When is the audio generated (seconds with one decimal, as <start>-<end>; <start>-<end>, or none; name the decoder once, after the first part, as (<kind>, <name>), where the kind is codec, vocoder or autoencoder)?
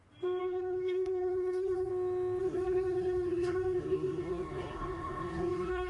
0.4-1.9 (codec, SNAC); 2.4-5.9